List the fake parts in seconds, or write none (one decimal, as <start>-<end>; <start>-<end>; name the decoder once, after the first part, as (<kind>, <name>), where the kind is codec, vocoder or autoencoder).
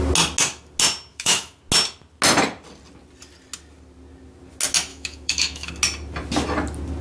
1.1-1.6 (autoencoder, DAC-VAE); 4.9-5.7